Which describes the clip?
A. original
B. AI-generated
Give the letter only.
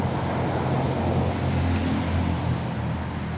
A